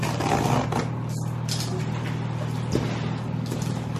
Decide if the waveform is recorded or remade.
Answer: recorded